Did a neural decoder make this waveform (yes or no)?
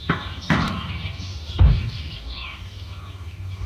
yes